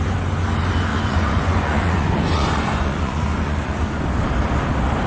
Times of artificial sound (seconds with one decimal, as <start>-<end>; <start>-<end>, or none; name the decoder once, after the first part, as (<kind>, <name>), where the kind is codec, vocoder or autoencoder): 0.9-4.0 (vocoder, Vocos)